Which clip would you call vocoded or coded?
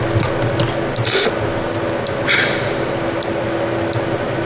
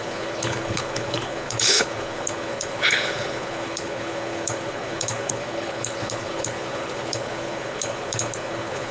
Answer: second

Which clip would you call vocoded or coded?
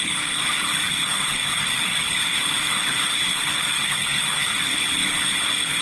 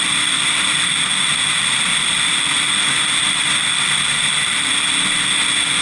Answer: first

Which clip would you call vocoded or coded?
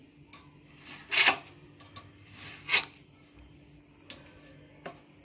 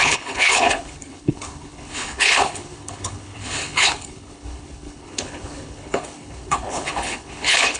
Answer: second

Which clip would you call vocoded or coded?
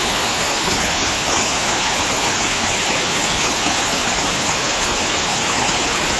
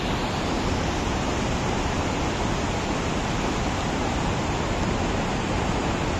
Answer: first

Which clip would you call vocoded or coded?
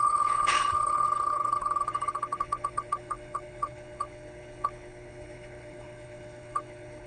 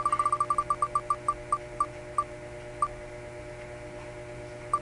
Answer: first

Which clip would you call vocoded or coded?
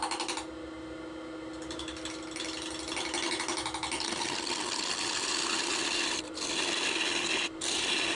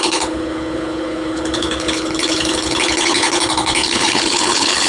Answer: second